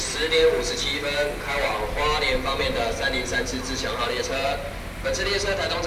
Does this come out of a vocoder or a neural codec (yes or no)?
no